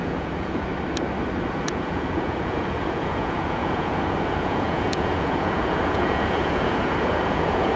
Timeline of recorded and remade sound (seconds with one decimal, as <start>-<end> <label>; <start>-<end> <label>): 0.0-0.7 remade; 0.7-1.5 recorded; 1.5-7.8 remade